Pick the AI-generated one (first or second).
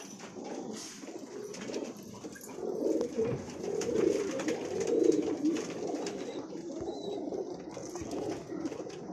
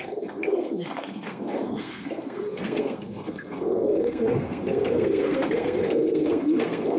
second